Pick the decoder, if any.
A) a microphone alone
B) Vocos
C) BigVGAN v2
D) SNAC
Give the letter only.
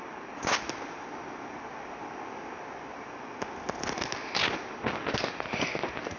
A